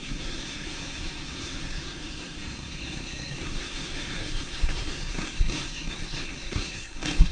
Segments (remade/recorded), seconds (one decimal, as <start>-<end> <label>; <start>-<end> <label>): 0.0-7.3 remade